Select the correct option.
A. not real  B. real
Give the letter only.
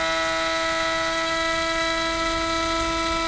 B